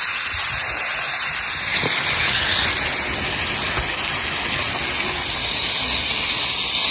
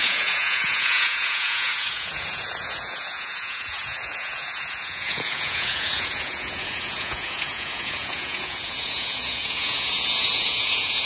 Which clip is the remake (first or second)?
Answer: second